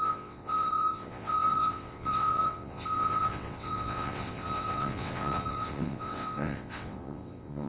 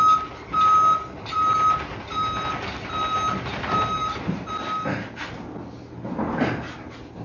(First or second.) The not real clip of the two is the first